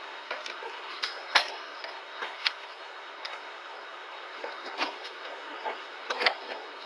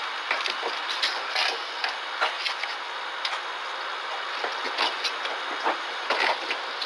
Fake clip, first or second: first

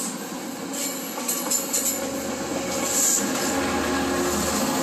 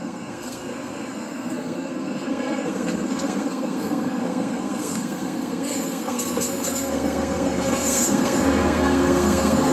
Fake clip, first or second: second